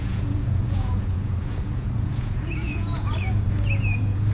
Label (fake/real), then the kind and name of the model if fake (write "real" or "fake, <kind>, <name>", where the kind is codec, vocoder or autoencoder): fake, vocoder, Vocos